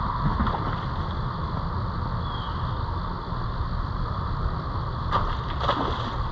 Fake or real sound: real